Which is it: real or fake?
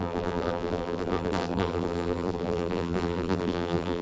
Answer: fake